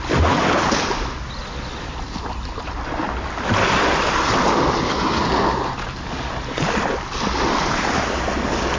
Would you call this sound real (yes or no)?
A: yes